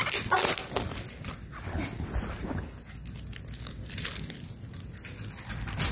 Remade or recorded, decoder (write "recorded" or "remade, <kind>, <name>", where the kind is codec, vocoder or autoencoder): recorded